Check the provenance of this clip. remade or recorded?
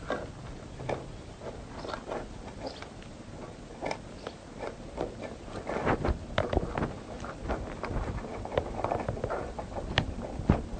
recorded